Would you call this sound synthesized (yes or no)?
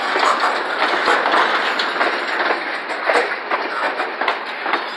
no